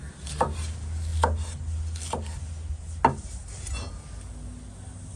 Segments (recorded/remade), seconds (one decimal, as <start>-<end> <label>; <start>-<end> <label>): 0.0-5.2 recorded